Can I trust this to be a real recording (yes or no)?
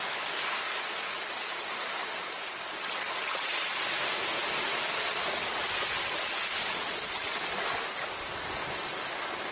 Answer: yes